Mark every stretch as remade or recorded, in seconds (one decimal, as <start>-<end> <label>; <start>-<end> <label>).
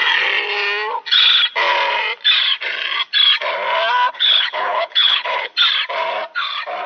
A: 0.0-4.1 recorded; 4.1-5.5 remade; 5.5-6.9 recorded